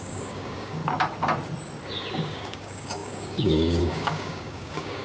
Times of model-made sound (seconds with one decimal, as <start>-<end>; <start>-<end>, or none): 0.0-0.8; 2.1-5.0